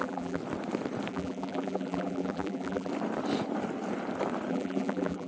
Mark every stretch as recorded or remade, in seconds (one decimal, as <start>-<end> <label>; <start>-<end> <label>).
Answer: 0.0-0.4 remade; 0.4-1.1 recorded; 1.1-2.9 remade; 2.9-4.5 recorded; 4.5-5.3 remade